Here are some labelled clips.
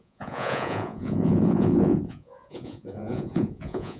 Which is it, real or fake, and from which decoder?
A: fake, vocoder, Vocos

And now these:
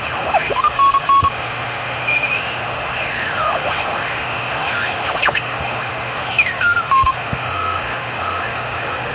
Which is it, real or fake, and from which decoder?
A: fake, autoencoder, DAC-VAE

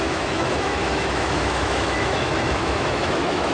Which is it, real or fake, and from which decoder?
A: fake, autoencoder, DAC-VAE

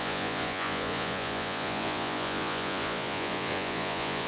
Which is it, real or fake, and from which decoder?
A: fake, vocoder, Vocos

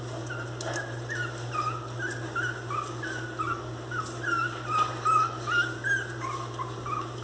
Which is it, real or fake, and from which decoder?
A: real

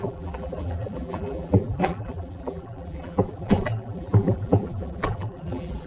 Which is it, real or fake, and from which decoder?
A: fake, vocoder, BigVGAN v2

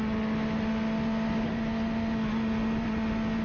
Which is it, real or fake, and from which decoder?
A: real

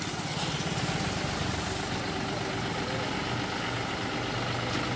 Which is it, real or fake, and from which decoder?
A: real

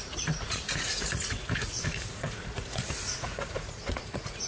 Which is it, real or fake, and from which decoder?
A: fake, vocoder, Vocos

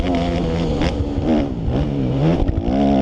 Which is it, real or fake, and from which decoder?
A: real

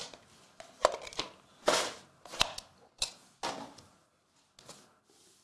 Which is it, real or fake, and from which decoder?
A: real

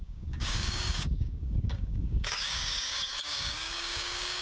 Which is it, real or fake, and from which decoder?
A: fake, codec, DAC